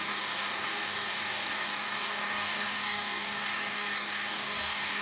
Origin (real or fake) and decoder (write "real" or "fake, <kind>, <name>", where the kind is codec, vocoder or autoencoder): fake, codec, DAC